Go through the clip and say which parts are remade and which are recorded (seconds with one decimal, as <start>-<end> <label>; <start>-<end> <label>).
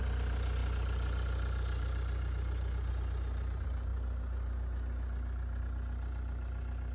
0.0-6.9 recorded